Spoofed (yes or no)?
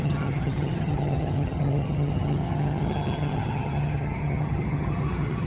yes